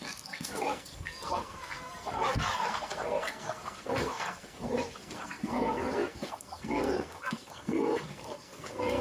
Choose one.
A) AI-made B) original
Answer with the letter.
A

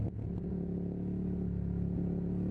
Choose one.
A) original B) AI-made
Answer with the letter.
A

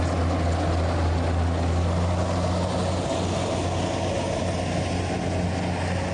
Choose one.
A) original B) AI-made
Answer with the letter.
A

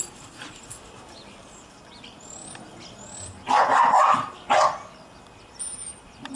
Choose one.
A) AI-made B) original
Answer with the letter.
B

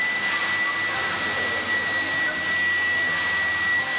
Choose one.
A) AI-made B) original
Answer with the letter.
B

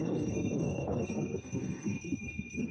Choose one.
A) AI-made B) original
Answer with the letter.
A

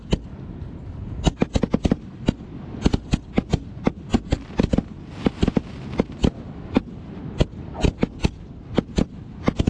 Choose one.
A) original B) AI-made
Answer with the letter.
A